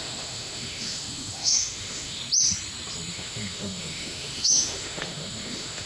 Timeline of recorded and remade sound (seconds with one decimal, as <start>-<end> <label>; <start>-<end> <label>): 0.0-2.2 remade; 2.2-3.1 recorded; 3.1-5.9 remade